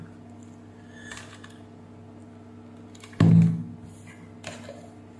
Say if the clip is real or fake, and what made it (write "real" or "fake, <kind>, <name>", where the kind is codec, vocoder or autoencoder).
real